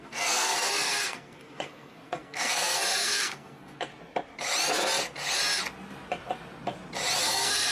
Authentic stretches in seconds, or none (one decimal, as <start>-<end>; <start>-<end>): 3.9-7.2